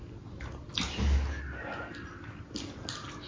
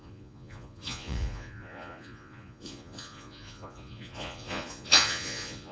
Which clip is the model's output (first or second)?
second